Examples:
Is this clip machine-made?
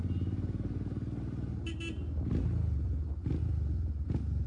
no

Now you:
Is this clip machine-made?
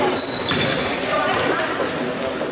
no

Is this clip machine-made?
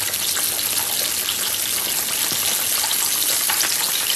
no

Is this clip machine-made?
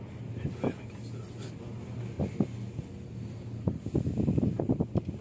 no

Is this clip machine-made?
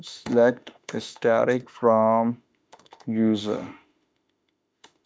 yes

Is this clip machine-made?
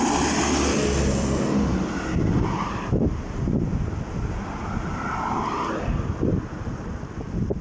no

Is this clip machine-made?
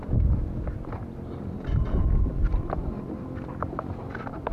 no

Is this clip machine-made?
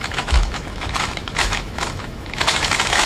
yes